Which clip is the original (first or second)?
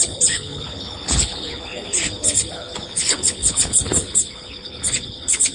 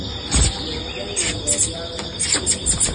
second